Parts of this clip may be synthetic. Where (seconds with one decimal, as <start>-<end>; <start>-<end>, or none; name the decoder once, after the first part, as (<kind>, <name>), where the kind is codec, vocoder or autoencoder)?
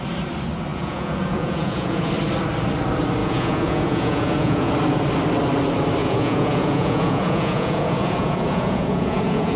0.7-2.1 (vocoder, Vocos); 3.2-4.7; 6.0-9.6